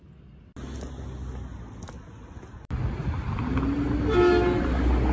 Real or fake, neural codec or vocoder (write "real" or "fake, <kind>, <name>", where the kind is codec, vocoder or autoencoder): real